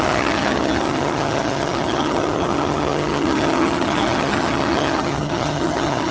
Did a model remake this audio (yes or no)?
yes